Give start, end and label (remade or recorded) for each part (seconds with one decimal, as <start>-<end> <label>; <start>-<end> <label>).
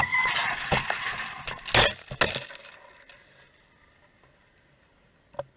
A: 0.0-5.6 recorded